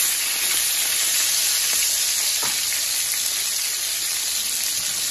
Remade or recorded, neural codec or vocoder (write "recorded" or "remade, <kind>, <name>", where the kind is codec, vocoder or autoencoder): recorded